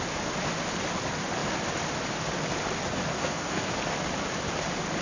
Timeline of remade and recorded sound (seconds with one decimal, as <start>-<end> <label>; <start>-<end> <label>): 0.0-3.1 recorded; 3.1-3.7 remade; 3.7-5.0 recorded